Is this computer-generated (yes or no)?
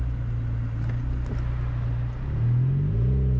no